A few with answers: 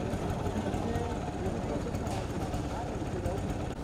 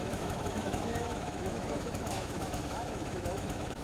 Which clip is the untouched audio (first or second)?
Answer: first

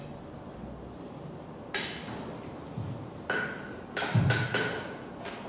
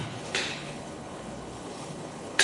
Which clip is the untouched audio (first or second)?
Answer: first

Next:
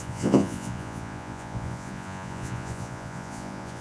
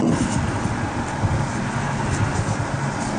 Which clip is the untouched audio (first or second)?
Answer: second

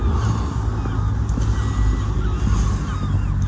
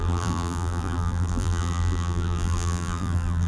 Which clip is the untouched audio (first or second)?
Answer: first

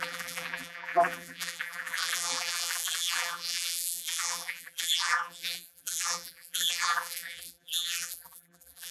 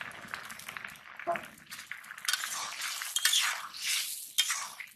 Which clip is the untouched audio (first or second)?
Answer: second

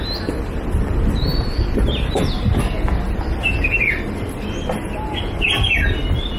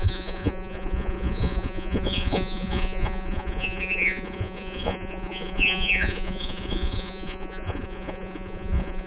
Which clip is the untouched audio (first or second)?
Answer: first